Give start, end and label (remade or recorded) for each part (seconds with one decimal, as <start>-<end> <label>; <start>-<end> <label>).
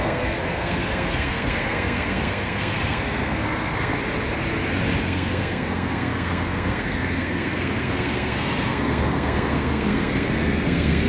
0.0-3.9 remade; 3.9-5.0 recorded; 5.0-11.1 remade